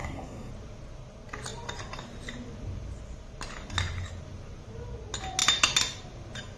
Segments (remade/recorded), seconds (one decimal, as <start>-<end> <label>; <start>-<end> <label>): 0.0-0.5 remade; 0.5-6.6 recorded